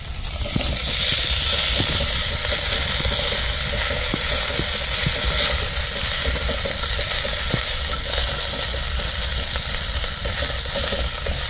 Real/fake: real